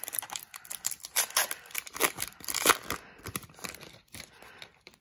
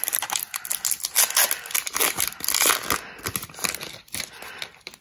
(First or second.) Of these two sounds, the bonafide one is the second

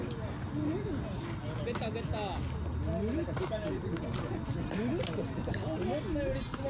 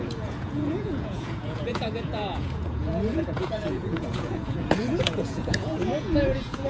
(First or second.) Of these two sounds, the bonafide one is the first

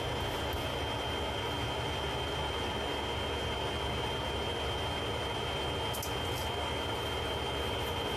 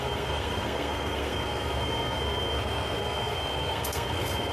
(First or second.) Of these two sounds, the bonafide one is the first